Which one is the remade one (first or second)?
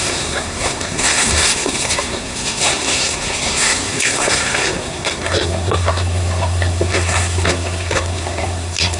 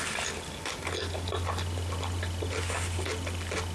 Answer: first